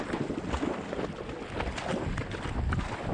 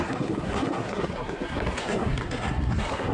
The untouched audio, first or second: first